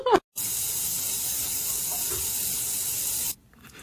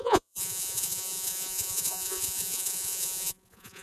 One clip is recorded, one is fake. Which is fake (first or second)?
second